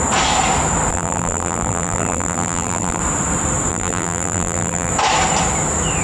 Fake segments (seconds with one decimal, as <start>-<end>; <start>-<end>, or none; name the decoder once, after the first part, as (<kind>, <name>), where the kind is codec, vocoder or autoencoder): 0.9-3.0 (vocoder, BigVGAN v2); 3.7-4.9